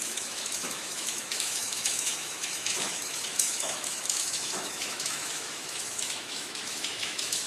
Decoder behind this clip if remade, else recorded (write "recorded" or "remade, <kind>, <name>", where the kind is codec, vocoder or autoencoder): remade, autoencoder, DAC-VAE